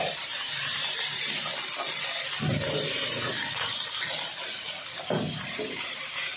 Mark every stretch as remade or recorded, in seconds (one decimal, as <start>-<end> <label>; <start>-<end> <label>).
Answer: 0.0-1.5 remade; 1.5-5.3 recorded; 5.3-6.4 remade